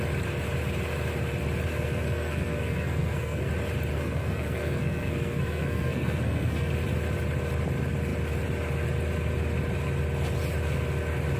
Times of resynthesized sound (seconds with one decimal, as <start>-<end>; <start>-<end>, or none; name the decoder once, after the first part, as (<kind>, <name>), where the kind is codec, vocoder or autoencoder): 1.7-3.5 (codec, SNAC); 3.9-6.7